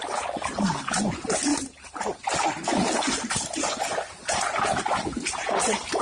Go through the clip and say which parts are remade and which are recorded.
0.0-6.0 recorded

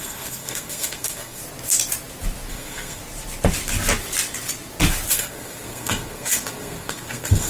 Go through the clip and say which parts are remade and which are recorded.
0.0-1.4 remade; 1.4-2.5 recorded; 2.5-3.0 remade; 3.0-5.1 recorded; 5.1-7.5 remade

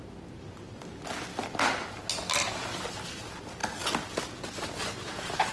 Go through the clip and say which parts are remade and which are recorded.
0.0-5.5 recorded

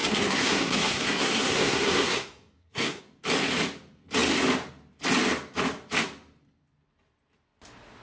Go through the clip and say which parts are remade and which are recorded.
0.0-3.0 remade; 3.0-8.0 recorded

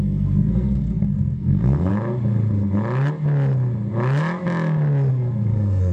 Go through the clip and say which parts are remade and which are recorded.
0.0-1.9 remade; 1.9-5.1 recorded; 5.1-5.9 remade

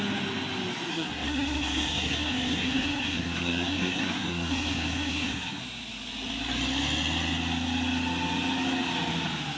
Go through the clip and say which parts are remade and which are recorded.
0.0-0.9 recorded; 0.9-5.6 remade; 5.6-9.6 recorded

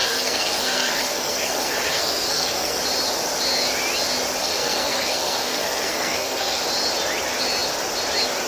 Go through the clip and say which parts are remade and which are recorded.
0.0-2.8 remade; 2.8-4.4 recorded; 4.4-6.6 remade; 6.6-8.5 recorded

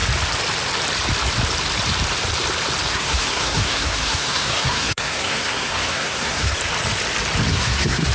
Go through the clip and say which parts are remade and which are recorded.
0.0-2.9 recorded; 2.9-6.6 remade; 6.6-7.5 recorded; 7.5-8.1 remade